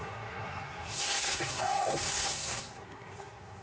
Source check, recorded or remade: remade